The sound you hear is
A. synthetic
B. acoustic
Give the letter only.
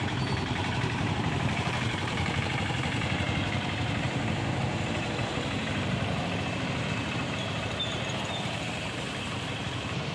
A